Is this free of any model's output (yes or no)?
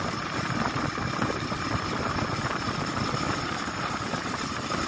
yes